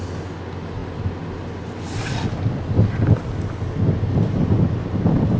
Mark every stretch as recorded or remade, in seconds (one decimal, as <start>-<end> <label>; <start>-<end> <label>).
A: 0.0-5.4 recorded